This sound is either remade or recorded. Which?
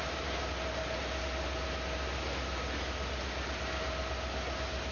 recorded